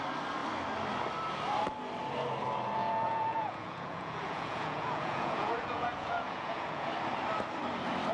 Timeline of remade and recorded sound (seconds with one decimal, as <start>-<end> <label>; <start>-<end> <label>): 0.0-2.8 recorded; 2.8-6.9 remade; 6.9-8.1 recorded